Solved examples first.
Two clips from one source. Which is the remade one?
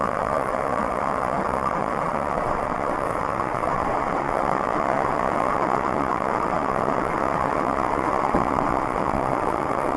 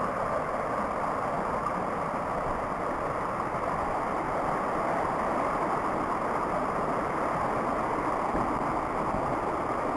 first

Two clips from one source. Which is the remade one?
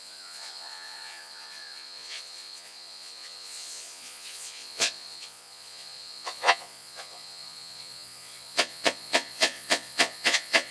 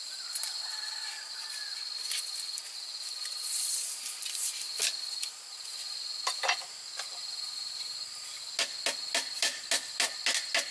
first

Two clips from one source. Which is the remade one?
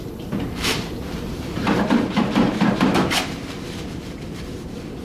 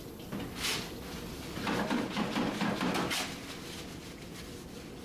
first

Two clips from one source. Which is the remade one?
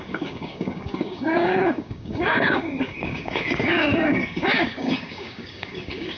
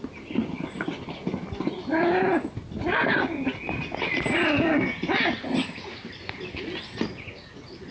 first